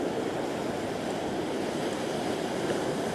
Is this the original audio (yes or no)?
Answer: yes